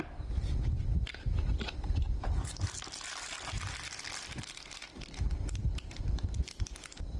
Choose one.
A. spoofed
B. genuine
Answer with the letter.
B